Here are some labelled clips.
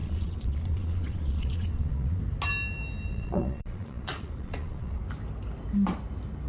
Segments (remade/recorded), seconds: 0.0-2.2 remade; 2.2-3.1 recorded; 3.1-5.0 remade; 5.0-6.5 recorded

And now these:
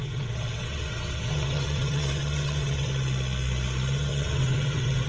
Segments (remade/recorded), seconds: 0.0-2.9 remade; 2.9-4.1 recorded; 4.1-5.1 remade

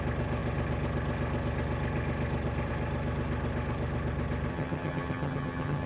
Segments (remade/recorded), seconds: 0.0-4.5 recorded; 4.5-5.9 remade